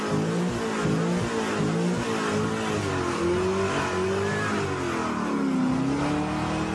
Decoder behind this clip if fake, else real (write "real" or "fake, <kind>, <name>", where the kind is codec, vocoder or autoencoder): real